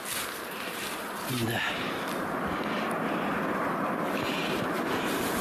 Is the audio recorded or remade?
recorded